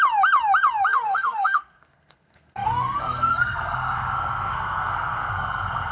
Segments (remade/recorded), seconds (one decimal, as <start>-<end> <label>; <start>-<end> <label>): 0.0-0.9 recorded; 0.9-5.9 remade